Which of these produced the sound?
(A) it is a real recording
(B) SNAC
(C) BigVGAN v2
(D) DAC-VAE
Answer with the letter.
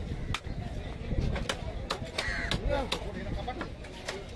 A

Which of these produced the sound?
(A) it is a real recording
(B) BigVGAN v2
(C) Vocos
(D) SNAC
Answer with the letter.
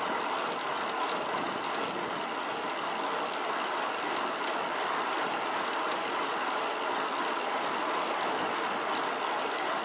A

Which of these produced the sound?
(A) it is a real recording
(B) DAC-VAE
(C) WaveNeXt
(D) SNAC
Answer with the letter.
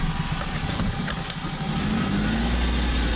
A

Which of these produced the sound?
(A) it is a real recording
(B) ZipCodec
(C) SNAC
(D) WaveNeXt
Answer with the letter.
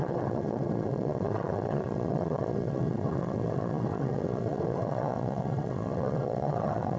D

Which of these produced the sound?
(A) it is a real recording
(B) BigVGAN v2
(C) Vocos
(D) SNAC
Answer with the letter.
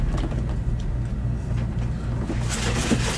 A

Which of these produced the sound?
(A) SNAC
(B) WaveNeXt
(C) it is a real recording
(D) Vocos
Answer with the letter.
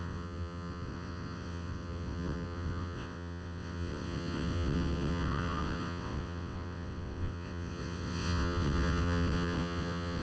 B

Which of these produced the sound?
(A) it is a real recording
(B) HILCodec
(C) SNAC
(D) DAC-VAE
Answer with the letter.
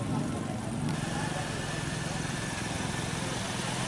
A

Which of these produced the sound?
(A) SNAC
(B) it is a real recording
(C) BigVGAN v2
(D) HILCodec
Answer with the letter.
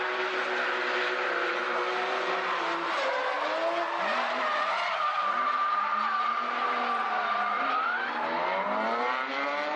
B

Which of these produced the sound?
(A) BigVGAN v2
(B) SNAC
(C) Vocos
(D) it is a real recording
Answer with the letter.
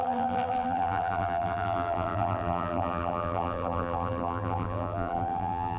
A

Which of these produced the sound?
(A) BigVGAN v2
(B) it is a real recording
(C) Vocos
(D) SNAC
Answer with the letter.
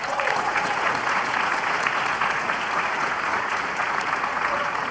C